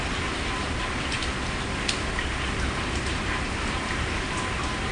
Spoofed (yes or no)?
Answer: no